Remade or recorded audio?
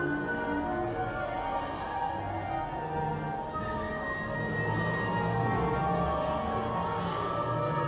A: recorded